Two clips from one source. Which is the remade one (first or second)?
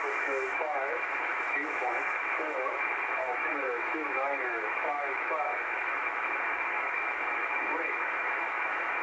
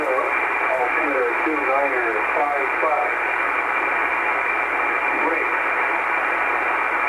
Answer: first